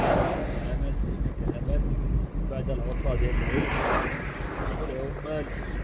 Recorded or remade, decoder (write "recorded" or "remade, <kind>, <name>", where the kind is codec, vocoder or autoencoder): recorded